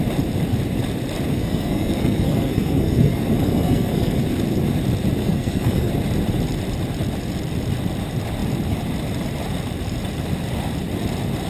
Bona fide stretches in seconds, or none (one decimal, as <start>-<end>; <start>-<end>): 0.0-1.3; 4.2-5.2; 5.9-11.5